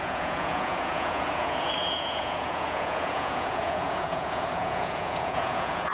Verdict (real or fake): fake